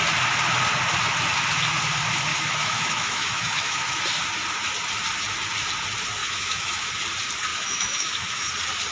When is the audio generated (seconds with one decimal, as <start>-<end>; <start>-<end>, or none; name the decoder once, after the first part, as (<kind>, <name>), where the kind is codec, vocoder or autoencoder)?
2.3-4.0 (autoencoder, DAC-VAE); 6.2-6.9; 7.5-8.5